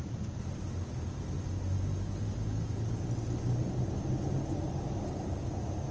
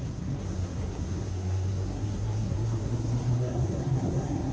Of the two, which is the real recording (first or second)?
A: first